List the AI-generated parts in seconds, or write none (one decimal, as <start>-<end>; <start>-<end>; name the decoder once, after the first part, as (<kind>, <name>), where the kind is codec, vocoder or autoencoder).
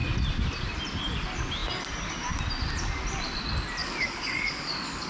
3.8-5.1 (codec, DAC)